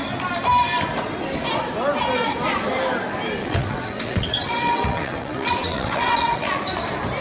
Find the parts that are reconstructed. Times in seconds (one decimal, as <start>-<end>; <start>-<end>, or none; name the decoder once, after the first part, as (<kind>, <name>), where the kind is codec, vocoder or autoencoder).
3.4-6.6 (vocoder, WaveNeXt)